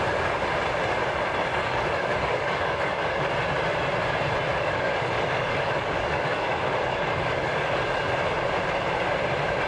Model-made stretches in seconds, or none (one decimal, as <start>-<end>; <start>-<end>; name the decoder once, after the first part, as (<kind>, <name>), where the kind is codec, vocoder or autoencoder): 1.5-3.3 (codec, DAC); 4.5-8.0